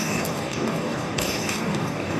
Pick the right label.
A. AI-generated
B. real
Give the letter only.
A